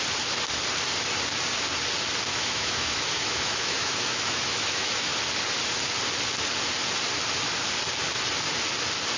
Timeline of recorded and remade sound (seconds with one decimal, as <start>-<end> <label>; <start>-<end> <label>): 0.0-2.3 recorded; 2.3-5.1 remade; 5.1-9.2 recorded